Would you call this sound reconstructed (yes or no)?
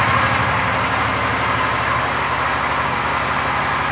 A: no